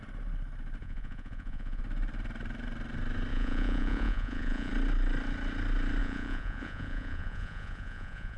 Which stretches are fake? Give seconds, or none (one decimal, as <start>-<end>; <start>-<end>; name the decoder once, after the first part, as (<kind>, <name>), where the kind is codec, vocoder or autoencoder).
0.8-1.8 (vocoder, Vocos); 3.3-4.7; 6.0-8.4